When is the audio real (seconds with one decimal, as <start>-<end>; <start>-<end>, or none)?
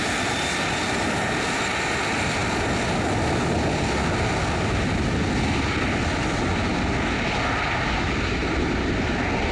0.0-9.5